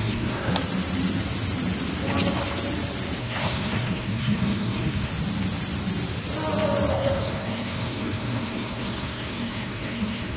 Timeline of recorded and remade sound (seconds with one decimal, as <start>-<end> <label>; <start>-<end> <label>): 0.0-0.5 remade; 0.5-3.2 recorded; 3.2-5.1 remade; 5.1-6.9 recorded; 6.9-10.4 remade